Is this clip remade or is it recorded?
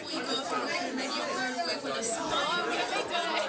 recorded